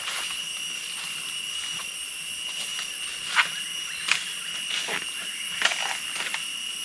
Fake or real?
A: real